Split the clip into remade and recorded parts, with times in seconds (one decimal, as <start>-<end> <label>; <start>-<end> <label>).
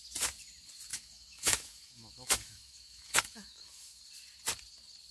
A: 0.0-0.9 recorded; 0.9-4.0 remade; 4.0-5.1 recorded